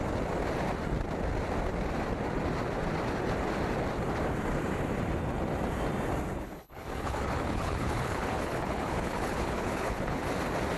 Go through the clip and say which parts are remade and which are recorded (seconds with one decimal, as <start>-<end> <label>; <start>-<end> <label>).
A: 0.0-6.4 recorded; 6.4-10.3 remade; 10.3-10.8 recorded